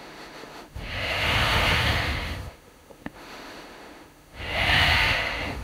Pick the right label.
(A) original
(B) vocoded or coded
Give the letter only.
B